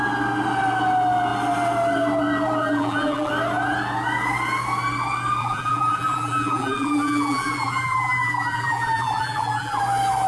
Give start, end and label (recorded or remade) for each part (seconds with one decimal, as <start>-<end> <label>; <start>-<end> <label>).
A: 0.0-2.6 recorded; 2.6-3.3 remade; 3.3-5.4 recorded; 5.4-9.8 remade; 9.8-10.3 recorded